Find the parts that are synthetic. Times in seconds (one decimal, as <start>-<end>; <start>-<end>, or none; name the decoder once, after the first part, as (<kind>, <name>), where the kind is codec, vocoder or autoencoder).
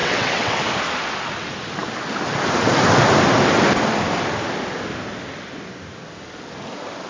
0.0-0.6 (vocoder, WaveNeXt)